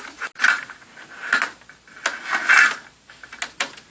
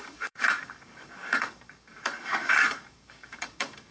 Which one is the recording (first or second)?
first